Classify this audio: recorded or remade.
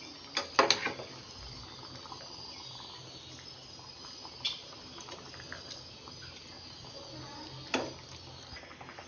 recorded